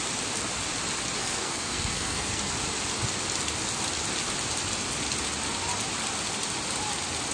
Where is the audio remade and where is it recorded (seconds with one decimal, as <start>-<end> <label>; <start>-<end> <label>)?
0.0-1.2 recorded; 1.2-2.5 remade; 2.5-7.3 recorded